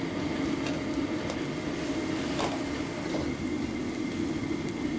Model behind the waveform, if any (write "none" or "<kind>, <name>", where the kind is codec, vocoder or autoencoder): none